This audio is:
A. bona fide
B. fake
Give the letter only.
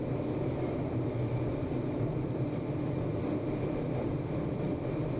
A